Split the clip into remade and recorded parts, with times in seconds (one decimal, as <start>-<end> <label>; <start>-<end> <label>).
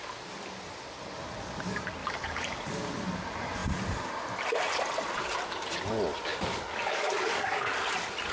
0.0-2.0 recorded; 2.0-2.7 remade; 2.7-6.3 recorded; 6.3-7.7 remade; 7.7-8.3 recorded